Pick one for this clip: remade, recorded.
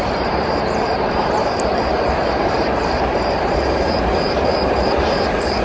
remade